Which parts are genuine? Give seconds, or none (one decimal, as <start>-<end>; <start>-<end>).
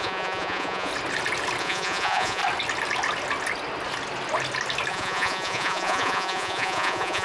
0.9-1.6; 2.4-4.9